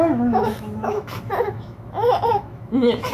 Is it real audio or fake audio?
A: fake